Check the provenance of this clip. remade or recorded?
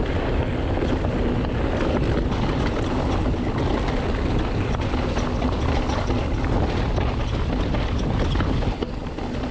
recorded